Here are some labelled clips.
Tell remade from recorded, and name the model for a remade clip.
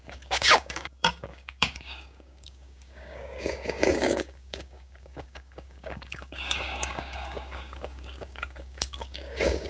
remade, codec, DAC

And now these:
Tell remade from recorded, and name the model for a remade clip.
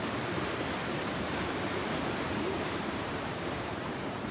remade, vocoder, BigVGAN v2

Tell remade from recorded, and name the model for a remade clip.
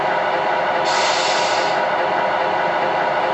recorded